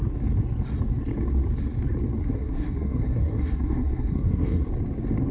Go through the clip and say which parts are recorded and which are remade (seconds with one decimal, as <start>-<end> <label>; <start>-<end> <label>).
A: 0.0-2.2 recorded; 2.2-4.7 remade; 4.7-5.3 recorded